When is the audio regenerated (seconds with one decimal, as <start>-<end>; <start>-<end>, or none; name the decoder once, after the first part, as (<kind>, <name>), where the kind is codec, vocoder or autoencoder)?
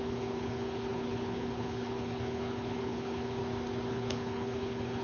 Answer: 0.0-3.4 (codec, HILCodec); 3.9-5.0